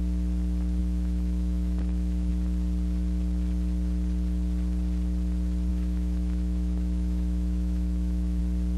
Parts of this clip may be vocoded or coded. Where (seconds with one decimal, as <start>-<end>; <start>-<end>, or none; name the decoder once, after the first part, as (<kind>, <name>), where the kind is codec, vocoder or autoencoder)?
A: 0.8-2.3 (autoencoder, DAC-VAE); 5.7-8.4